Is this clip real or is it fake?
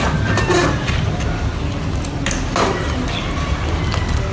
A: real